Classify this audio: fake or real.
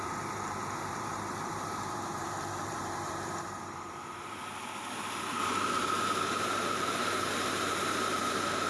fake